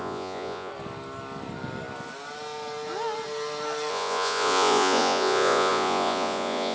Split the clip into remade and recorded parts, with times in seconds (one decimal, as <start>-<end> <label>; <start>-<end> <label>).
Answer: 0.0-0.7 remade; 0.7-3.9 recorded; 3.9-6.7 remade